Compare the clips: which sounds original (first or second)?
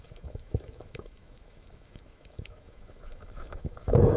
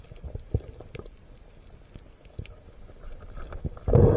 second